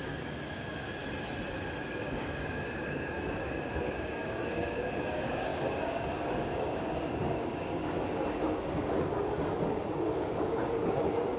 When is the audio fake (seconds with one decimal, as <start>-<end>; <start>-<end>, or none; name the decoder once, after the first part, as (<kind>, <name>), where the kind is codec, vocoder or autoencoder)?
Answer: 0.0-1.0 (codec, DAC); 1.8-11.4